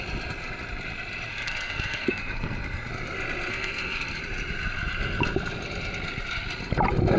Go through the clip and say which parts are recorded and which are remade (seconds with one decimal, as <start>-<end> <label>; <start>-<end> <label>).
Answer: 0.0-1.3 recorded; 1.3-2.9 remade; 2.9-3.5 recorded; 3.5-4.2 remade; 4.2-7.2 recorded

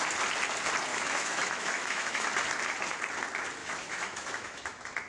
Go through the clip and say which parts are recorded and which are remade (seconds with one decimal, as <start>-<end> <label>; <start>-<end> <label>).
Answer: 0.0-0.9 recorded; 0.9-2.3 remade; 2.3-3.6 recorded; 3.6-5.1 remade

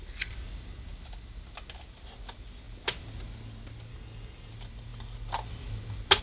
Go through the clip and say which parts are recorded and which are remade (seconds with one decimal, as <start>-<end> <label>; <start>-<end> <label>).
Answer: 0.0-3.9 recorded; 3.9-4.5 remade; 4.5-6.2 recorded

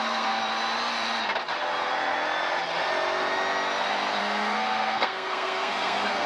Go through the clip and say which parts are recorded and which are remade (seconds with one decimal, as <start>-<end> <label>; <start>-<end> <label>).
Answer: 0.0-0.4 remade; 0.4-4.2 recorded; 4.2-6.3 remade

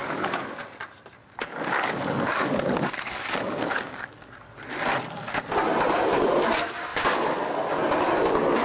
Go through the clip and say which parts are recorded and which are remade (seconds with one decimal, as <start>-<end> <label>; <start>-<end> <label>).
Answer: 0.0-0.6 remade; 0.6-1.2 recorded; 1.2-4.3 remade; 4.3-8.6 recorded

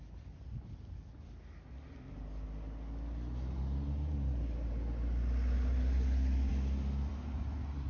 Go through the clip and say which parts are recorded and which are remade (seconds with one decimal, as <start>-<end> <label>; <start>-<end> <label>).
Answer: 0.0-7.9 recorded